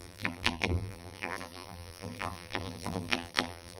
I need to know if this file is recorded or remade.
remade